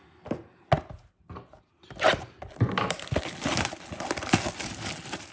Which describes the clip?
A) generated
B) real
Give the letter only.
B